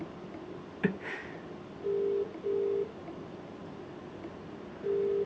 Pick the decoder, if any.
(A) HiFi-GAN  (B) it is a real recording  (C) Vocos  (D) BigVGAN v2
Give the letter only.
B